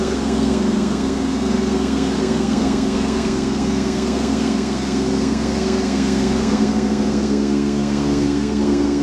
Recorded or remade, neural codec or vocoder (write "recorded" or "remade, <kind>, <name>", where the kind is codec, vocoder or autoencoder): remade, codec, SNAC